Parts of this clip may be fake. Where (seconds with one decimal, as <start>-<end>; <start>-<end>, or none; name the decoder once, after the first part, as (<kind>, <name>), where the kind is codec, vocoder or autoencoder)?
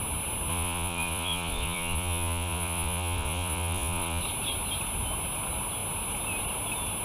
0.5-4.2 (vocoder, Vocos)